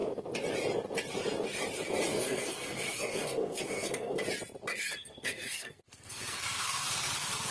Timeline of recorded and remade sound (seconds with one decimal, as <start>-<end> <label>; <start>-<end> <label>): 0.0-2.1 recorded; 2.1-4.2 remade; 4.2-4.7 recorded; 4.7-7.5 remade